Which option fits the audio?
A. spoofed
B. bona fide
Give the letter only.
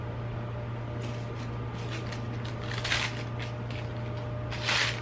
B